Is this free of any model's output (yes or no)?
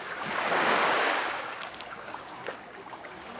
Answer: no